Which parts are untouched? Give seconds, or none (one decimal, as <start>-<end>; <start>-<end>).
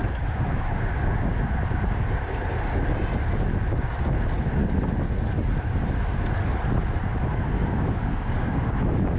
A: 0.9-7.6; 8.7-9.2